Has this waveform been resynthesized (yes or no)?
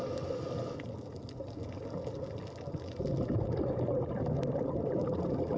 no